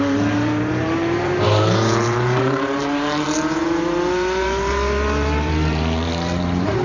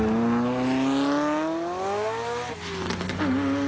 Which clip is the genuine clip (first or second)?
second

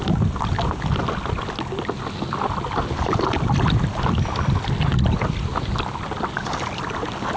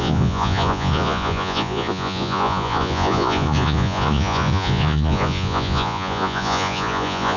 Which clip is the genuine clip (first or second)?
first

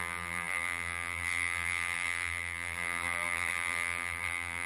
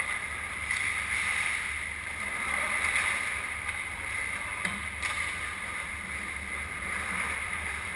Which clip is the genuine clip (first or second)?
second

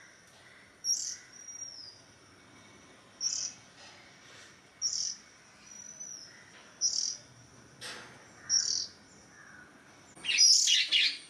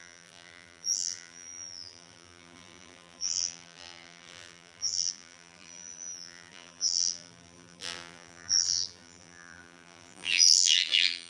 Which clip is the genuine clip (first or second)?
first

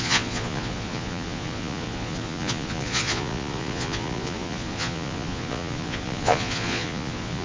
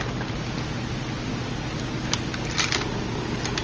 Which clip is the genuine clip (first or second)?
second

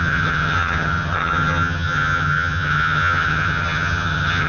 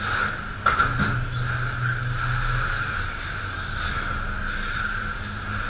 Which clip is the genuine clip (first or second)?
second